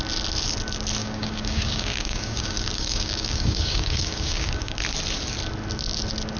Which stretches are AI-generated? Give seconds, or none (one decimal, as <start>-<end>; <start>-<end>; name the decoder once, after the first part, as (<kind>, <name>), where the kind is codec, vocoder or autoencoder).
1.0-4.8 (codec, DAC)